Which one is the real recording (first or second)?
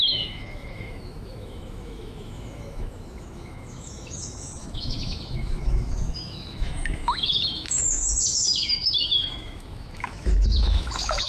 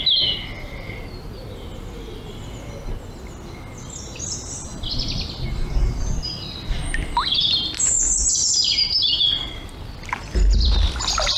second